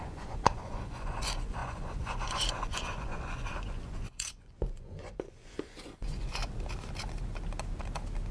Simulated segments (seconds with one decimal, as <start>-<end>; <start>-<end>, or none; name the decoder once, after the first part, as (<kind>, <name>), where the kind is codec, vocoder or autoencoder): 0.0-6.4 (vocoder, Vocos)